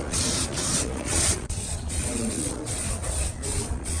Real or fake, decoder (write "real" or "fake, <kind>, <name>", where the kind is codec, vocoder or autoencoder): fake, vocoder, Vocos